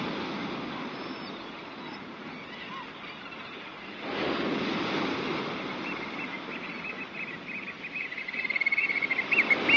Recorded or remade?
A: recorded